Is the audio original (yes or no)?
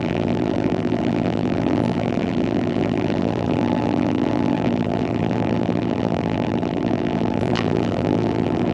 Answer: no